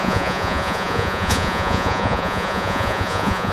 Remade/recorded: remade